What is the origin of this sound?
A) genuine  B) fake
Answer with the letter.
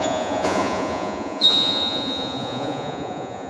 B